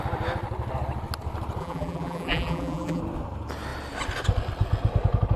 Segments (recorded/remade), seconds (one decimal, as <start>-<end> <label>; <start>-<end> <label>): 0.0-1.6 recorded; 1.6-3.0 remade; 3.0-5.4 recorded